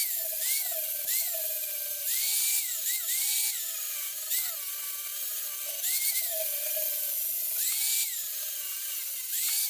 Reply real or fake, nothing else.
real